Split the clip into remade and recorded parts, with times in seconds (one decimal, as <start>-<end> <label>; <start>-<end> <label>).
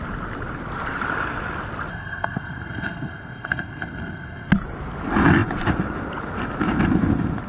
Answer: 0.0-1.9 recorded; 1.9-4.5 remade; 4.5-7.5 recorded